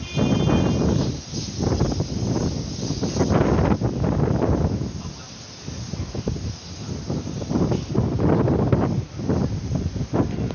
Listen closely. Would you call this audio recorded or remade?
recorded